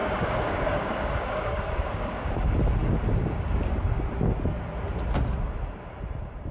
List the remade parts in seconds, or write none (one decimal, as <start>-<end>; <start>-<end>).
0.0-2.5